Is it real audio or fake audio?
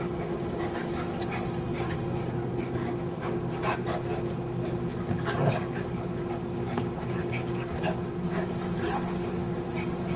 real